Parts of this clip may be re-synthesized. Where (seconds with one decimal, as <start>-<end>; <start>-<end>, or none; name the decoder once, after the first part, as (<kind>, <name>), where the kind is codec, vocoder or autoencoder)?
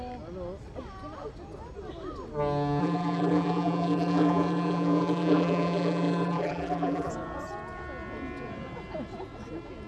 2.8-7.1 (vocoder, BigVGAN v2)